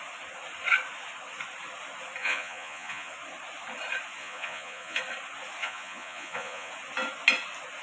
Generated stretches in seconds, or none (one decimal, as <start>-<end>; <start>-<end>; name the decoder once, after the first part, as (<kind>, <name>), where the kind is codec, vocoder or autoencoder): 2.2-3.1 (vocoder, Vocos); 4.2-5.0; 5.6-6.7